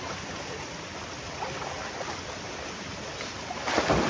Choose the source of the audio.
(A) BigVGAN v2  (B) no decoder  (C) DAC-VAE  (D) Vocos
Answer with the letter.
B